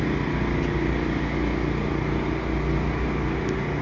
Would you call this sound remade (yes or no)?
no